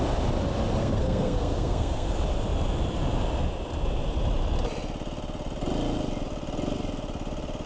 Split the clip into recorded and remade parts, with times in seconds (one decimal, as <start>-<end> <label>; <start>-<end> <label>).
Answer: 0.0-0.8 recorded; 0.8-2.1 remade; 2.1-7.7 recorded